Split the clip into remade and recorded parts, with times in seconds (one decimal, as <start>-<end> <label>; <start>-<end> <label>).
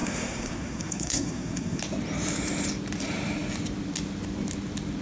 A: 0.0-1.8 remade; 1.8-5.0 recorded